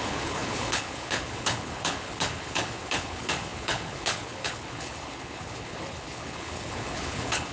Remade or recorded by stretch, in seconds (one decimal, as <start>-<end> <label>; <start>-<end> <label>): 0.0-7.5 remade